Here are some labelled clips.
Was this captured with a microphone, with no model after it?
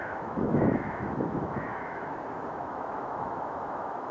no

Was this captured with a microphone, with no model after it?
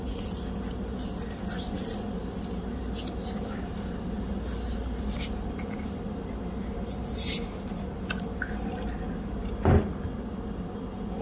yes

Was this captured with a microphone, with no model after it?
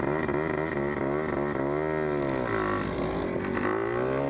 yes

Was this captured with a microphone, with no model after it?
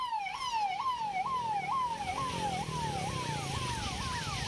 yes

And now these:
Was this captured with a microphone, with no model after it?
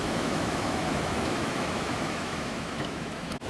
no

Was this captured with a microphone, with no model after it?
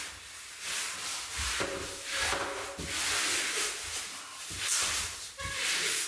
yes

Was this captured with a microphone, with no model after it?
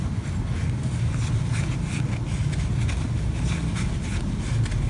yes